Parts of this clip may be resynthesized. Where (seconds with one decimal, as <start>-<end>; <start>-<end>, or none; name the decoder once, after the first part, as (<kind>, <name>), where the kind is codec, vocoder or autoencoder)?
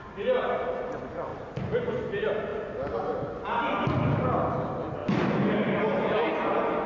none